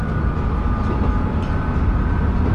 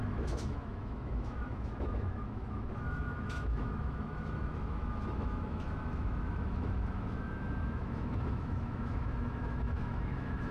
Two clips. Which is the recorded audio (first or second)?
first